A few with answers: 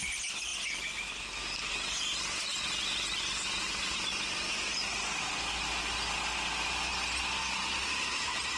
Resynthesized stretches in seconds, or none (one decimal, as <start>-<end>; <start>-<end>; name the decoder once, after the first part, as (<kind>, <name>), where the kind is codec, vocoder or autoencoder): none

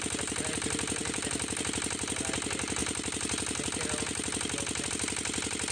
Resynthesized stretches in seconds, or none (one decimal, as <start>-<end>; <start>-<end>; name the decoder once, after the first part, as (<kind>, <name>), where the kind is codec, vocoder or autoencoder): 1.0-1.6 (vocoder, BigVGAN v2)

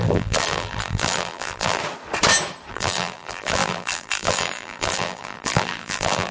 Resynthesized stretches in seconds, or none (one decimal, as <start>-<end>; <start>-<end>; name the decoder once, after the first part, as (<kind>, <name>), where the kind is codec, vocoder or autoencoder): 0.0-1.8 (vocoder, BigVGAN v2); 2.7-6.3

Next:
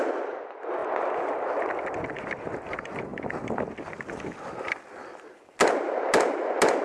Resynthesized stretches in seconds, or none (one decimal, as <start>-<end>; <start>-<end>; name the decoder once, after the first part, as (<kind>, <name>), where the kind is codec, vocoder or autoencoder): none

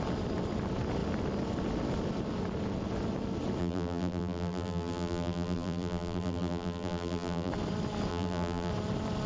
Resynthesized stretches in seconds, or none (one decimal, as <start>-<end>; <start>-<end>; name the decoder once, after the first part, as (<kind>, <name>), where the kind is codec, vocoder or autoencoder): 3.6-7.5 (vocoder, BigVGAN v2); 8.1-8.7

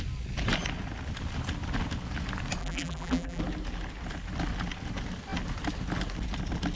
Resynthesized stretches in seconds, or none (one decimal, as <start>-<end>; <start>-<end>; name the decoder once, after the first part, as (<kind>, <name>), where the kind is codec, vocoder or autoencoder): 2.6-3.4 (vocoder, BigVGAN v2)

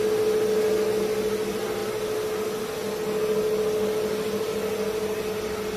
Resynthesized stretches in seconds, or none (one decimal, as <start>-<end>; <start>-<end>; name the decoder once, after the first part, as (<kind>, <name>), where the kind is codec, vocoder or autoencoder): none

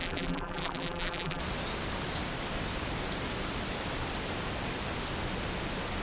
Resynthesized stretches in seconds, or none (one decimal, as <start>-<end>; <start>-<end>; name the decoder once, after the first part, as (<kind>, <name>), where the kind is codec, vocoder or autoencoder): 0.0-1.4 (vocoder, BigVGAN v2)